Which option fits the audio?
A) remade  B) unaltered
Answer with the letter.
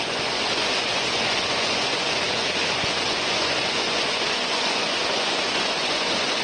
A